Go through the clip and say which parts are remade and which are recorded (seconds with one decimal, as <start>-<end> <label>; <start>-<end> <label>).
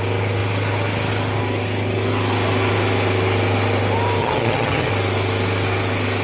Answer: 0.0-4.2 recorded; 4.2-4.9 remade; 4.9-6.2 recorded